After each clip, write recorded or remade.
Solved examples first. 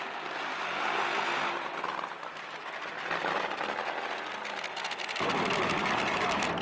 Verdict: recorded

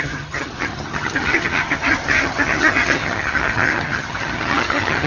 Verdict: remade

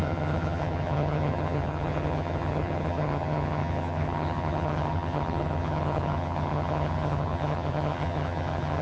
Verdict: remade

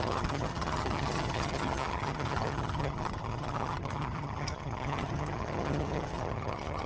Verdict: remade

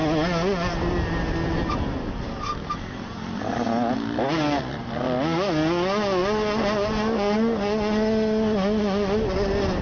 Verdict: recorded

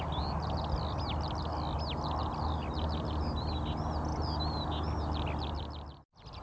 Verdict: recorded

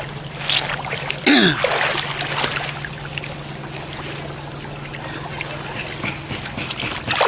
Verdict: recorded